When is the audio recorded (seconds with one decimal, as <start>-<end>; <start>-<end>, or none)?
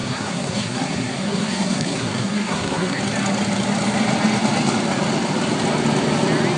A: 3.0-6.6